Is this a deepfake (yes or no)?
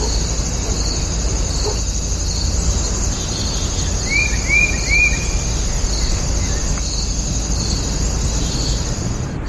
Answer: no